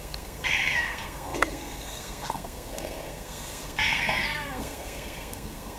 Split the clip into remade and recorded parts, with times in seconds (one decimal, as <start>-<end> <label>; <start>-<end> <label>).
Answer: 0.0-5.8 remade